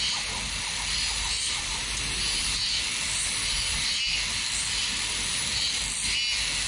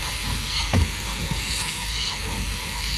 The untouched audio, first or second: first